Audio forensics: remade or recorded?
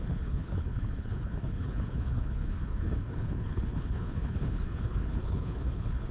remade